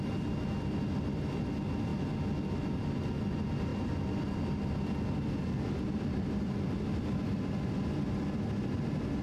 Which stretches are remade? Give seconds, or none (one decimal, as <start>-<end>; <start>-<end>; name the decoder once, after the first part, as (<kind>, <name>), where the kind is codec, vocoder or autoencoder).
none